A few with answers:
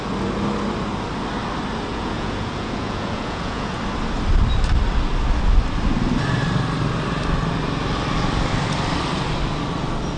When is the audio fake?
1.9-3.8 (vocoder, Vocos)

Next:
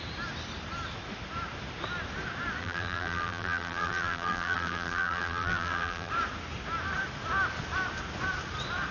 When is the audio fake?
2.6-6.1 (vocoder, BigVGAN v2)

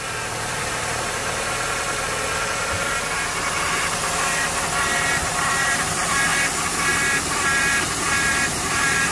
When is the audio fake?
0.0-1.2 (vocoder, BigVGAN v2); 4.9-6.3; 6.9-9.1

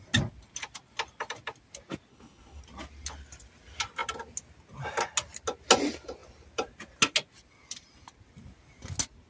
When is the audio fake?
2.1-2.6 (codec, HILCodec)

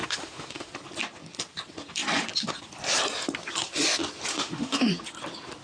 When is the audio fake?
0.0-0.7 (autoencoder, DAC-VAE); 4.3-4.9

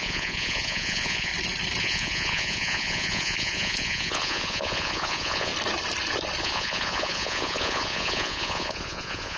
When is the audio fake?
0.0-1.3 (vocoder, Vocos); 1.8-5.5; 6.4-9.4

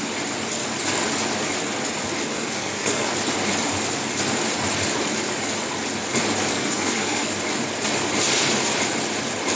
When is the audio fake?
2.3-3.1 (codec, SNAC); 6.5-7.3

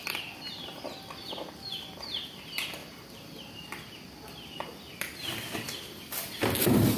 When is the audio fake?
none